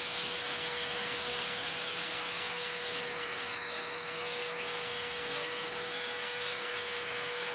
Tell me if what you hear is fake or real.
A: fake